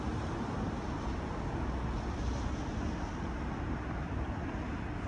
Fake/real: real